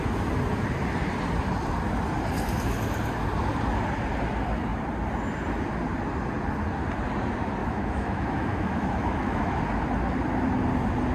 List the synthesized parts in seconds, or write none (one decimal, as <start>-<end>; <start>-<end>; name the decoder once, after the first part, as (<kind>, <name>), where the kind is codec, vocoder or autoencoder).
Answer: 7.6-9.6 (autoencoder, DAC-VAE)